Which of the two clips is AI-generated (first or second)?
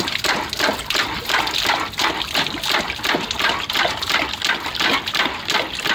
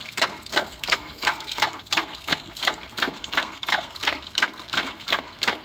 second